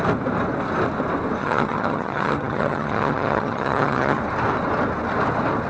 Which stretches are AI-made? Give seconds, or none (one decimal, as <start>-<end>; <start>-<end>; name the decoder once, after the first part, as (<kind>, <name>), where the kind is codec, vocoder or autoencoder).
1.4-4.2 (vocoder, HiFi-GAN)